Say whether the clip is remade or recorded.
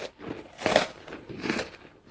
recorded